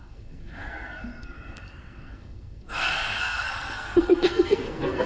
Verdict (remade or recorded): remade